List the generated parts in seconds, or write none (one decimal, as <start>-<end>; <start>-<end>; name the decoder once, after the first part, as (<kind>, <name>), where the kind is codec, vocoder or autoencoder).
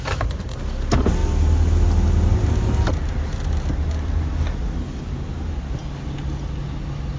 none